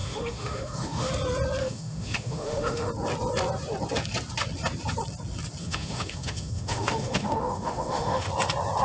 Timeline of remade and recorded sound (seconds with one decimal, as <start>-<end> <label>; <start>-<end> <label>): 0.0-1.1 remade; 1.1-1.6 recorded; 1.6-2.9 remade; 2.9-5.6 recorded; 5.6-8.3 remade; 8.3-8.8 recorded